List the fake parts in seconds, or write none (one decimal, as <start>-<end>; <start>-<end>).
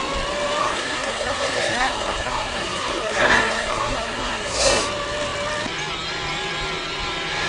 0.6-4.8